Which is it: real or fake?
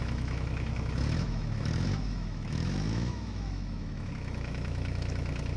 fake